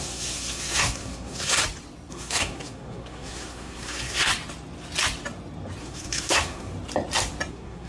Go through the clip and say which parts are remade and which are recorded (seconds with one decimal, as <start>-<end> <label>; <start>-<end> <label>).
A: 0.0-1.6 remade; 1.6-2.1 recorded; 2.1-4.3 remade; 4.3-5.8 recorded; 5.8-6.7 remade; 6.7-7.5 recorded; 7.5-7.9 remade